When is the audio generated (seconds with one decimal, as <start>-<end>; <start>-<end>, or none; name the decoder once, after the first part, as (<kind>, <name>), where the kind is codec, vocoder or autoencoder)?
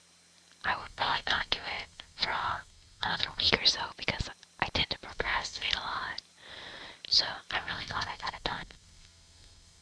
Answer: 0.8-3.5 (codec, SNAC); 5.1-5.7; 7.6-9.8